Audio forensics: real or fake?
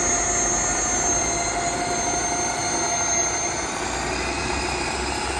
real